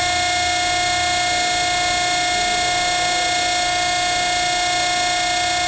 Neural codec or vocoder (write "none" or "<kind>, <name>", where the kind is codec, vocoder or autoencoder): none